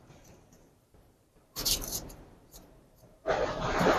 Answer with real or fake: fake